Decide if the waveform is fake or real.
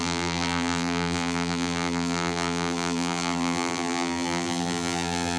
fake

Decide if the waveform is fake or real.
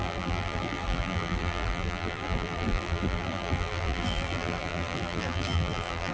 fake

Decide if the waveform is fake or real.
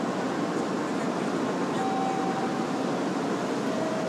real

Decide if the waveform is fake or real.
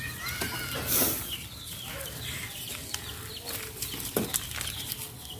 real